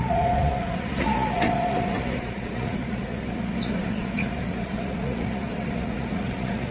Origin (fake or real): fake